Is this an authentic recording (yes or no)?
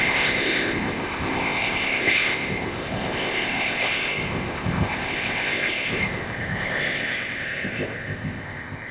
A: no